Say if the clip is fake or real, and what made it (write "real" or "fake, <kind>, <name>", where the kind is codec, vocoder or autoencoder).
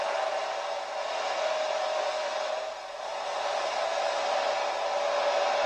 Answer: real